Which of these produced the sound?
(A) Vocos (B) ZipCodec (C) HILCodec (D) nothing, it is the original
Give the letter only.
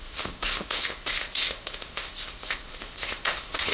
B